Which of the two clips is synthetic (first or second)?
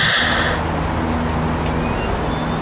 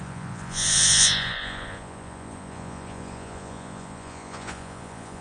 second